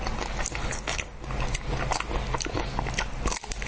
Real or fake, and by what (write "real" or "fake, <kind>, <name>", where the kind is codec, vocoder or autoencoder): real